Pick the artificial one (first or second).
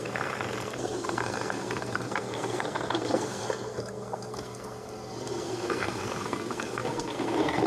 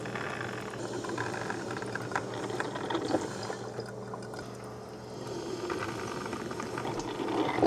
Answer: first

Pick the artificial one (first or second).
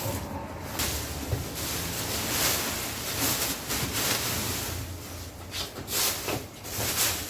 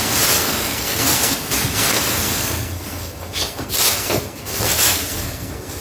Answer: second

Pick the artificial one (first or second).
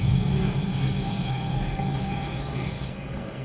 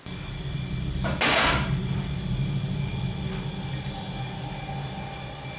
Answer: first